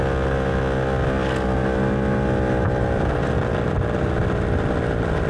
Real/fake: real